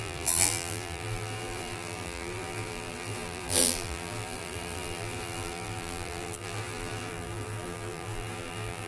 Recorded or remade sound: remade